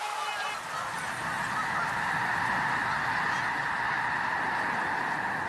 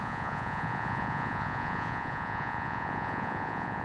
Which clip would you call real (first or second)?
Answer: first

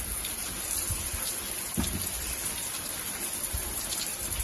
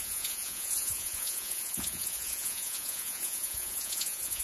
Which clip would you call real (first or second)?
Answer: first